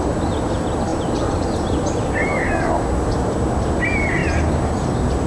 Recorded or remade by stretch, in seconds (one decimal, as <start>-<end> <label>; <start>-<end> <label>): 0.0-5.3 recorded